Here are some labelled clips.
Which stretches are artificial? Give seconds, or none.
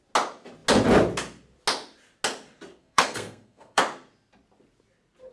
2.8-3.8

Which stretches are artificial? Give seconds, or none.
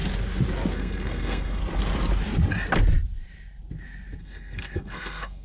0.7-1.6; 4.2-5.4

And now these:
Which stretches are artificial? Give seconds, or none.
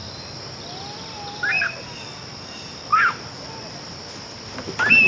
none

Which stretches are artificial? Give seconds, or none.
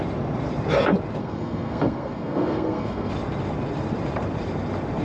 1.2-3.1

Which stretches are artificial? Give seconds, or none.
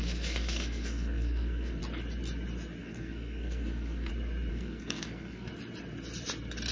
0.0-1.8; 2.8-4.1; 4.5-5.5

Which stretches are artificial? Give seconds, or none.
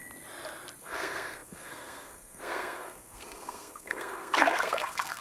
0.8-5.2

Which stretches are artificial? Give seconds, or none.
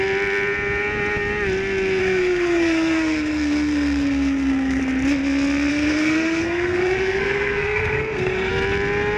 2.0-4.8; 5.7-8.5